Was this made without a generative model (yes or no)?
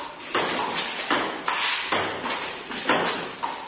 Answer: yes